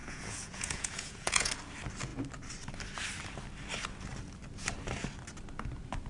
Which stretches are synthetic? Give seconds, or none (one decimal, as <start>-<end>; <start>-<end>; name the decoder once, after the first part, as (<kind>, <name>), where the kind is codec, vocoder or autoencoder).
0.0-1.5 (vocoder, Vocos)